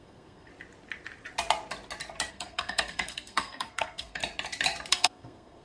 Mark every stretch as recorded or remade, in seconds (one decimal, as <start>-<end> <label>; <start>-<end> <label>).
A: 0.0-0.5 remade; 0.5-2.3 recorded; 2.3-4.2 remade; 4.2-4.9 recorded; 4.9-5.6 remade